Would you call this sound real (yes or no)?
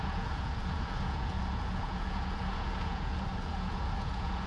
no